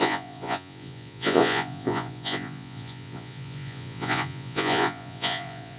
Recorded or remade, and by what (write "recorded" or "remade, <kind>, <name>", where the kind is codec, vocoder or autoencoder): remade, vocoder, Vocos